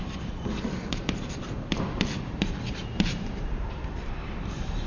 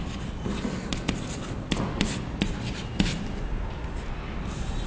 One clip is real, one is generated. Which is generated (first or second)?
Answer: first